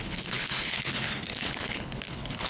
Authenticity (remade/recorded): remade